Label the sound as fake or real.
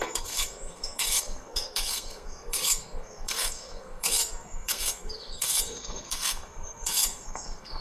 fake